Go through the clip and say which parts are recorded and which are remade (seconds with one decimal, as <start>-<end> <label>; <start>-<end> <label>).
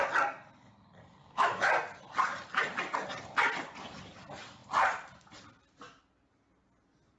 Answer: 0.0-1.2 recorded; 1.2-1.7 remade; 1.7-7.2 recorded